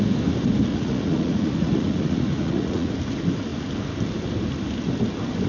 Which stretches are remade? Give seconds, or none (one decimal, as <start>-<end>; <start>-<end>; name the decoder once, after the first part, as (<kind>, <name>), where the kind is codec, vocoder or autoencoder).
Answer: 0.7-2.9 (vocoder, Vocos)